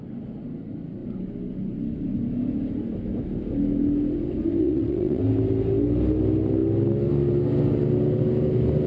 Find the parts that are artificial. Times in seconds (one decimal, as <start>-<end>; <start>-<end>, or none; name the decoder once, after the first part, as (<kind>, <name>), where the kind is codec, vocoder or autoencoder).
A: 4.6-5.2 (vocoder, WaveNeXt)